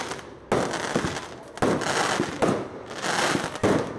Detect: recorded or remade recorded